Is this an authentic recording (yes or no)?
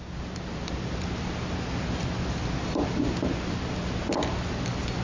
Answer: yes